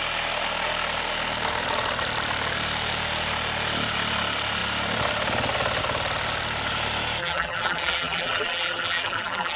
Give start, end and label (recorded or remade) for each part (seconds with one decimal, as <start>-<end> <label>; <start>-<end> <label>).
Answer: 0.0-7.2 recorded; 7.2-9.6 remade